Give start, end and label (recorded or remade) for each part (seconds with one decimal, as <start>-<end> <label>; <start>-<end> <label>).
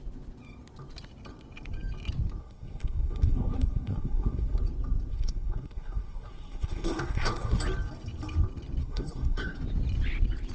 0.0-2.4 recorded; 2.4-4.6 remade; 4.6-5.1 recorded; 5.1-7.6 remade; 7.6-8.8 recorded; 8.8-9.6 remade; 9.6-10.5 recorded